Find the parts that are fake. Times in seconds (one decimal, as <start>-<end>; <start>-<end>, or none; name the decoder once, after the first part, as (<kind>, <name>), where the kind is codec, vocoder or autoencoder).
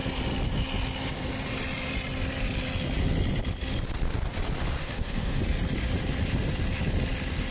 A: 4.8-5.4 (autoencoder, DAC-VAE)